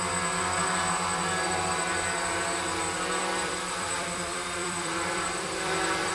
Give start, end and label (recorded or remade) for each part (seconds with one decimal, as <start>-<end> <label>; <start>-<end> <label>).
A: 0.0-3.2 recorded; 3.2-6.1 remade